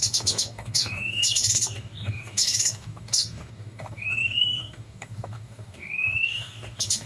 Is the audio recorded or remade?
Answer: remade